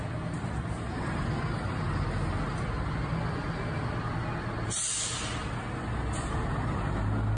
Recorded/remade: recorded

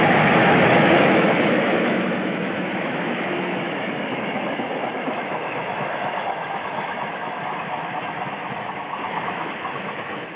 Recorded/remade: remade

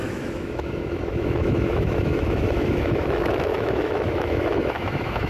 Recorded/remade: remade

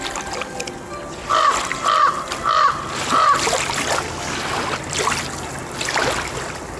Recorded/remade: recorded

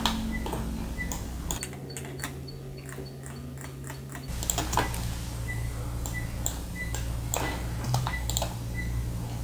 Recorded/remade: recorded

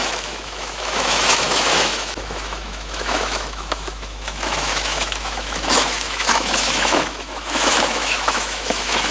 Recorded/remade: remade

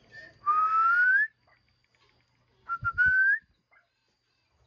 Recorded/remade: recorded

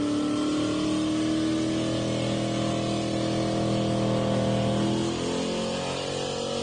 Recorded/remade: recorded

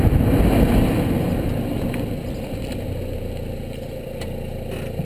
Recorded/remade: recorded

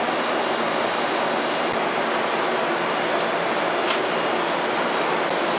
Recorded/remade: recorded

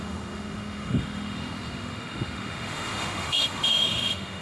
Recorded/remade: remade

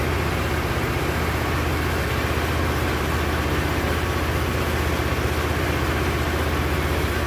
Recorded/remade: recorded